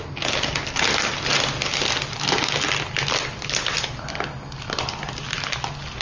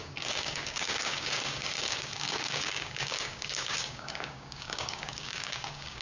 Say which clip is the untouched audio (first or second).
first